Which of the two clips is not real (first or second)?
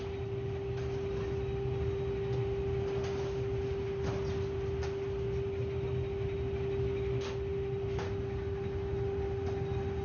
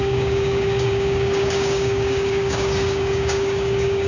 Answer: second